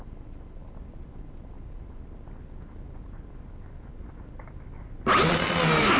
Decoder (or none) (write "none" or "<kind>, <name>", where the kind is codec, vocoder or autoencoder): none